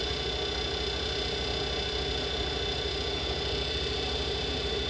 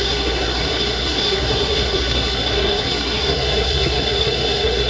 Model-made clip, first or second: second